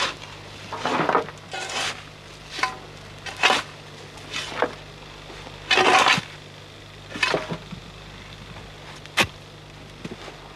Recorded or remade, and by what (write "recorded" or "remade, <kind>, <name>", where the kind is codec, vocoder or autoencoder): recorded